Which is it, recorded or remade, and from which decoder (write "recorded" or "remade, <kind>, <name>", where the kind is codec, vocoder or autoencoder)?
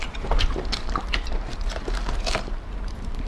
remade, vocoder, BigVGAN v2